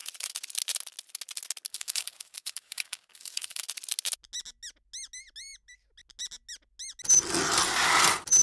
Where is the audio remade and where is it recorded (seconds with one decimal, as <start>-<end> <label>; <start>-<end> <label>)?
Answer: 0.0-1.7 recorded; 1.7-3.6 remade; 3.6-8.4 recorded